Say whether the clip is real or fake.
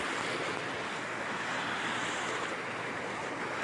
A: real